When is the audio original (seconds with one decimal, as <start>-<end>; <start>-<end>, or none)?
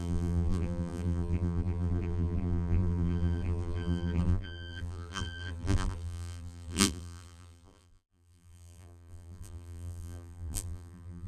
none